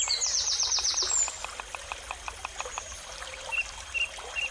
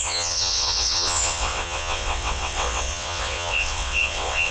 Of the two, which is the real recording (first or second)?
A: first